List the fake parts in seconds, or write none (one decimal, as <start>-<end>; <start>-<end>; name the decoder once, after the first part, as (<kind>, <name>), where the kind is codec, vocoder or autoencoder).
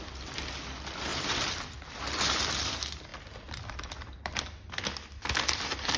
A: 1.1-2.0 (vocoder, BigVGAN v2); 3.1-4.4